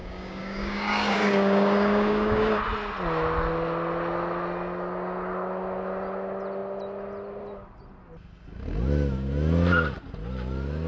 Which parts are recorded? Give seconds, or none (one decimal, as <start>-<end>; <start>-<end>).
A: 2.6-10.9

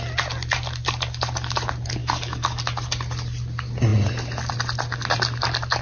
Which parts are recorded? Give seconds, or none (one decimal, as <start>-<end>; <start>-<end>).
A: 0.0-2.0; 2.6-5.8